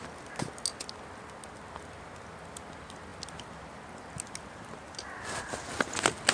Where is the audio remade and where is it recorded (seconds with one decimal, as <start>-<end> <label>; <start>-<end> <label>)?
0.0-6.3 recorded